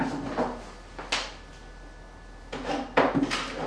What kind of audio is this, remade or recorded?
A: recorded